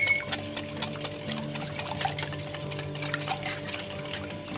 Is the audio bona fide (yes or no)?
yes